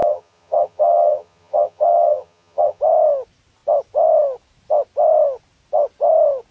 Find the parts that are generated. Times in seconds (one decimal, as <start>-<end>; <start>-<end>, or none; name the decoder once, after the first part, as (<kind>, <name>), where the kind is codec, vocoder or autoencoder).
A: 0.0-2.8 (vocoder, HiFi-GAN)